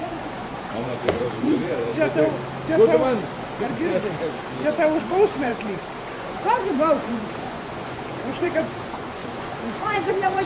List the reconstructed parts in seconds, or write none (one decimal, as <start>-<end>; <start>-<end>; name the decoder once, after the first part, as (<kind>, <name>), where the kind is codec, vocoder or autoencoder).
0.0-1.9 (vocoder, Vocos); 5.0-5.5; 6.1-10.5